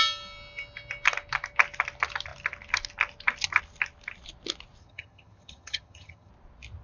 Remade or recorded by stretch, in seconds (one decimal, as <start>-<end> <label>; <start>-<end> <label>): 0.0-4.8 recorded; 4.8-6.3 remade; 6.3-6.8 recorded